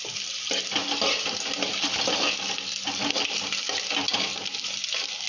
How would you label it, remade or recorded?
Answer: recorded